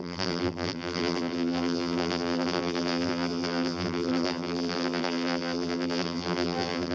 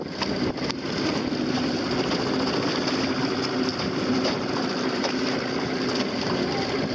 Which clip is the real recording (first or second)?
second